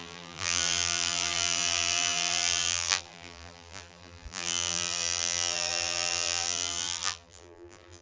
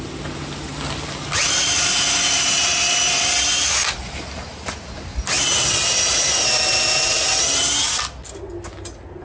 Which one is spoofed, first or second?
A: first